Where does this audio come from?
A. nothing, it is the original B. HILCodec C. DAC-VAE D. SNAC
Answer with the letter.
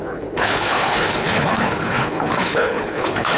B